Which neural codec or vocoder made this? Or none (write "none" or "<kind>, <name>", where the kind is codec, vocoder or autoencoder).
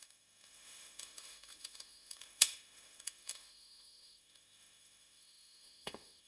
autoencoder, DAC-VAE